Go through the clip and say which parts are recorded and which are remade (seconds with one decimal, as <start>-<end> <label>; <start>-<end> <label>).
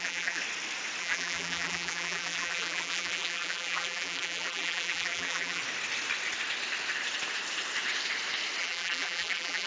0.0-0.4 remade; 0.4-1.0 recorded; 1.0-5.6 remade; 5.6-8.6 recorded; 8.6-9.7 remade